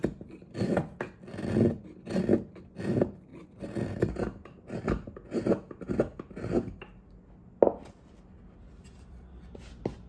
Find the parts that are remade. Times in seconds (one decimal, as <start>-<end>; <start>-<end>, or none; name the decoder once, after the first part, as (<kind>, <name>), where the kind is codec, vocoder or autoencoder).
none